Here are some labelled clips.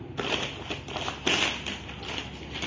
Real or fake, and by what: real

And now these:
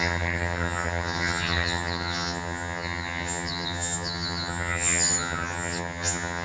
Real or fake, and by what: fake, vocoder, HiFi-GAN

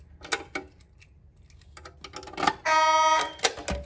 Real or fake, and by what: real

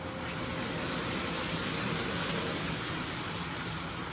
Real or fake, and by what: real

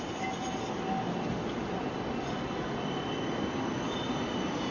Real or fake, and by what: real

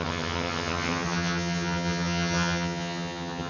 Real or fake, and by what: fake, vocoder, HiFi-GAN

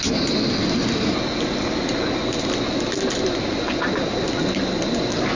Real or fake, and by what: real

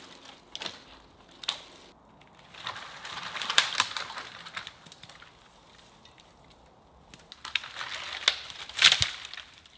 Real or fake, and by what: real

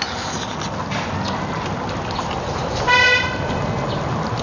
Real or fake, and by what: real